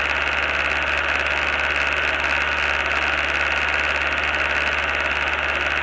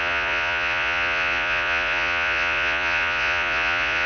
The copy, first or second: second